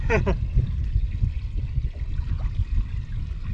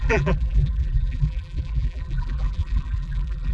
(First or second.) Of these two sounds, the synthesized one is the second